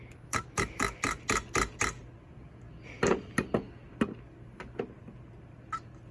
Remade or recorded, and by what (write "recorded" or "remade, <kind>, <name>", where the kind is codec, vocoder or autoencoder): recorded